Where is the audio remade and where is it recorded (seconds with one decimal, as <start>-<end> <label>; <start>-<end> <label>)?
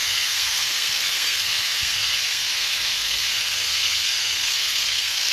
0.0-5.3 remade